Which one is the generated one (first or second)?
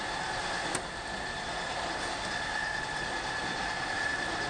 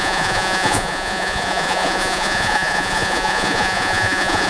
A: second